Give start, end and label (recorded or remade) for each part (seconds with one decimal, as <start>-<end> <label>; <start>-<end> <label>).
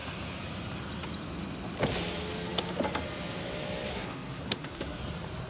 0.0-3.9 recorded; 3.9-5.0 remade; 5.0-5.5 recorded